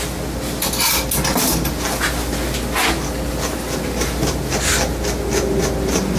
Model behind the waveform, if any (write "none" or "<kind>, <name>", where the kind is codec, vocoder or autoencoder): none